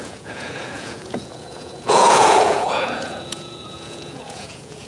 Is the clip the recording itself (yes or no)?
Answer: no